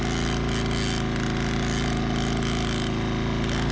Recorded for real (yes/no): yes